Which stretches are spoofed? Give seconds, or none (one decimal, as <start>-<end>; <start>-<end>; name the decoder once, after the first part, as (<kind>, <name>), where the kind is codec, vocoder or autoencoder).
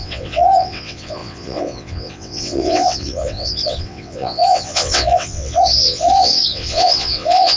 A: 0.0-7.6 (vocoder, WaveNeXt)